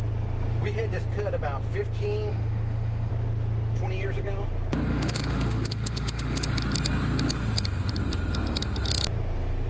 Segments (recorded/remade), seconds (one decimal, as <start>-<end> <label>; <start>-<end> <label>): 0.0-2.3 recorded; 2.3-3.1 remade; 3.1-4.9 recorded; 4.9-6.5 remade; 6.5-9.7 recorded